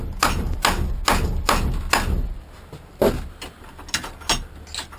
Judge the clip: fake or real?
real